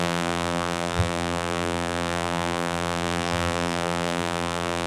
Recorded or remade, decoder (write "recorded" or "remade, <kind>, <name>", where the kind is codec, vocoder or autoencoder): remade, vocoder, BigVGAN v2